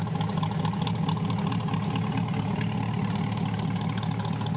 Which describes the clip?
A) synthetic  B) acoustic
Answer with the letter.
B